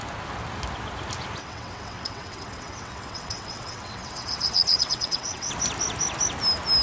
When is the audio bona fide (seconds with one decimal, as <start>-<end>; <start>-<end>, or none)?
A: 0.0-1.4; 5.5-6.8